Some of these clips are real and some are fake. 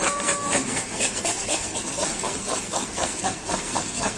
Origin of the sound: fake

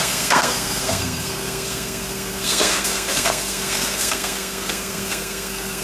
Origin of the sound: fake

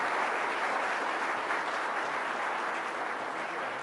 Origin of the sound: real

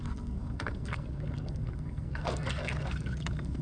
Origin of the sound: fake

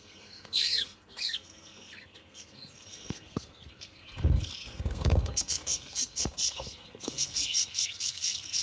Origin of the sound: fake